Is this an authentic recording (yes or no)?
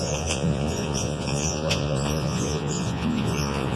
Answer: no